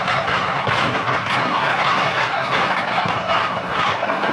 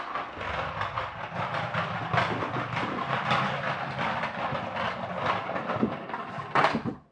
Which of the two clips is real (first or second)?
second